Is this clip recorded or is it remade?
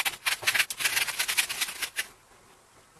recorded